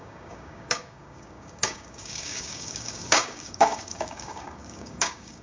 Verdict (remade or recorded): remade